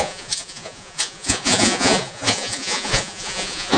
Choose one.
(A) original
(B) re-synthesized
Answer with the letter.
B